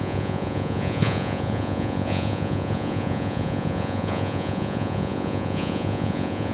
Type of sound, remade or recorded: remade